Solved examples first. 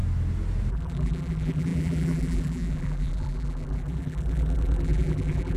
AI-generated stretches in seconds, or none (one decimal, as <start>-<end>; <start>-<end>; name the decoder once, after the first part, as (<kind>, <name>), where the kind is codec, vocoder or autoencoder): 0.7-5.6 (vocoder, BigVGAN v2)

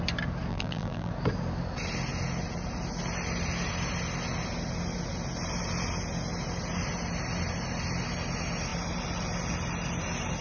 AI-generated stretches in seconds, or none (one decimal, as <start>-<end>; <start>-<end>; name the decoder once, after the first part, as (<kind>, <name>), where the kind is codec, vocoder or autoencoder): 0.5-1.1 (vocoder, BigVGAN v2)

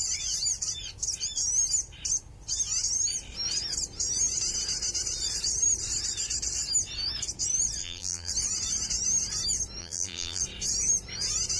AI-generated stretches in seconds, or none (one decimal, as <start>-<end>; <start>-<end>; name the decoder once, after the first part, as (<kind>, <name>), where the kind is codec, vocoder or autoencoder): 7.8-8.3 (vocoder, BigVGAN v2); 9.8-10.4